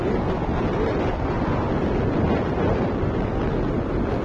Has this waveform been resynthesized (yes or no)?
no